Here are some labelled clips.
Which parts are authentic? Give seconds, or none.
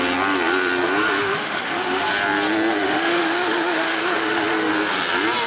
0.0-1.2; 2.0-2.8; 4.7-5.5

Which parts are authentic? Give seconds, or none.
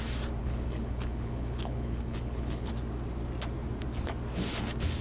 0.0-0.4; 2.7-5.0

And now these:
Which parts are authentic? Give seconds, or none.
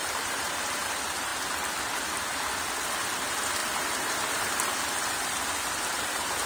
0.6-6.5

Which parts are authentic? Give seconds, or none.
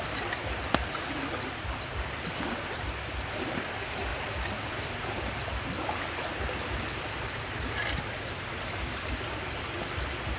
0.0-10.4